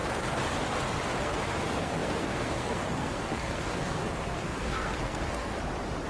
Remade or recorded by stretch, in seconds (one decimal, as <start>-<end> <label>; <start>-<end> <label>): 0.0-1.2 recorded; 1.2-5.5 remade; 5.5-6.1 recorded